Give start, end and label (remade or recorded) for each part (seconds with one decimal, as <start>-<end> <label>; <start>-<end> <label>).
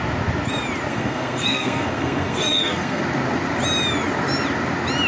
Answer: 0.0-0.9 recorded; 0.9-3.0 remade; 3.0-5.1 recorded